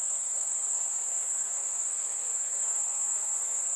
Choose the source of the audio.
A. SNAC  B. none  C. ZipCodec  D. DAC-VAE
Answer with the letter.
A